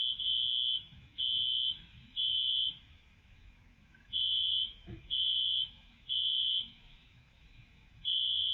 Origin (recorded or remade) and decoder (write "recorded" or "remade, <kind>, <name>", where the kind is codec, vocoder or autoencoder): remade, autoencoder, DAC-VAE